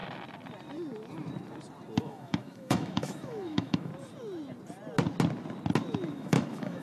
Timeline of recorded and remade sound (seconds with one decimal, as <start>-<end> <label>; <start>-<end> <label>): 0.0-2.0 recorded; 2.0-3.9 remade; 3.9-6.1 recorded; 6.1-6.8 remade